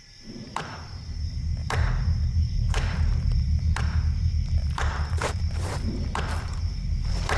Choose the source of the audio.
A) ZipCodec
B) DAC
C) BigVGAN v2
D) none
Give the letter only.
C